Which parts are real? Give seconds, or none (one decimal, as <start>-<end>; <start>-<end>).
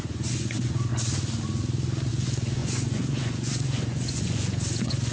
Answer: 0.9-2.1